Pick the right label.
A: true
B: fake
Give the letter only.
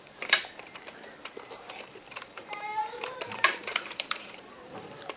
B